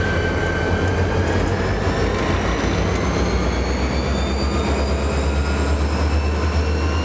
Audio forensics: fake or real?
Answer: real